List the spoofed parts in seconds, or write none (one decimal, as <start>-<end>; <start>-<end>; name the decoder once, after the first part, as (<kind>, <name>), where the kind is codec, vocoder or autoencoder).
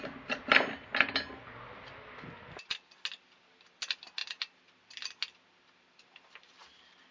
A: none